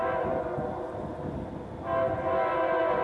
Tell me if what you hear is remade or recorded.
recorded